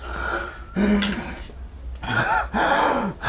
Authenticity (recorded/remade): recorded